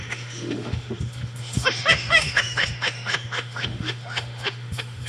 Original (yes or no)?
no